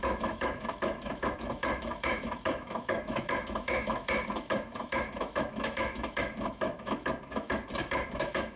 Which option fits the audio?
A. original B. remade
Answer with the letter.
B